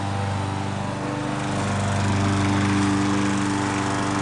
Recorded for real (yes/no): yes